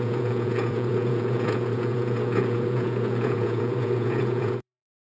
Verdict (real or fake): fake